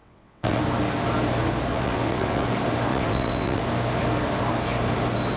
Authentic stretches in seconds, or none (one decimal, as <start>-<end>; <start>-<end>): 0.6-1.7; 2.5-2.9; 3.6-5.4